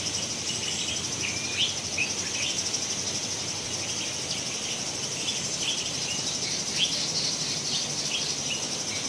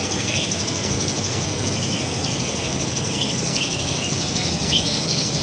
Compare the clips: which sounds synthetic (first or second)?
second